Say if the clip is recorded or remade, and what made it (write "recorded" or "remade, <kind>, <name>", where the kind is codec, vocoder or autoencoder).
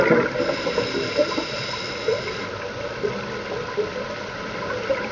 recorded